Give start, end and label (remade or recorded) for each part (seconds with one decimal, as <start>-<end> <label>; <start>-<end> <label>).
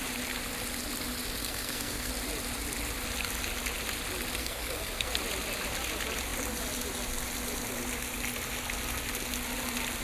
0.0-1.4 recorded; 1.4-2.1 remade; 2.1-4.4 recorded; 4.4-5.1 remade; 5.1-10.0 recorded